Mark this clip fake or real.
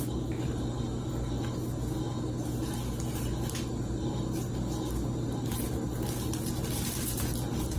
real